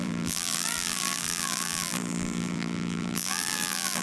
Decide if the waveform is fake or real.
fake